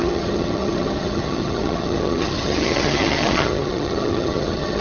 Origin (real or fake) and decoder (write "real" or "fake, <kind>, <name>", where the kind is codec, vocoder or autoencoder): fake, vocoder, HiFi-GAN